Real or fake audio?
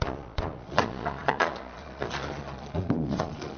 fake